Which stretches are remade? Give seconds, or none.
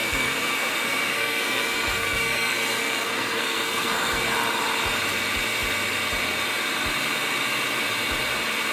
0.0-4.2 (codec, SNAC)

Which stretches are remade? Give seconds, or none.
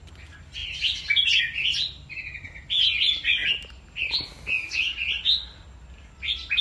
none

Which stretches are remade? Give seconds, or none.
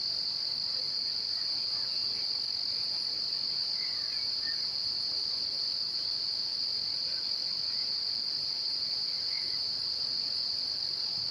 none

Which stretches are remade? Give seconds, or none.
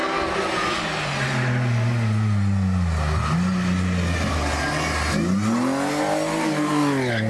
none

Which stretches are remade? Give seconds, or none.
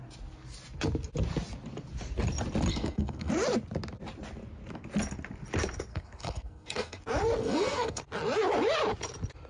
2.7-3.3 (codec, SNAC); 5.9-7.0; 7.4-8.0